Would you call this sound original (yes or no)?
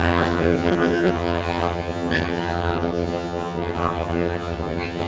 no